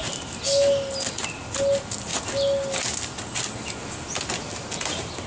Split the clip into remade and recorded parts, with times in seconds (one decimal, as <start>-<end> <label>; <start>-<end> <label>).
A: 0.0-5.3 recorded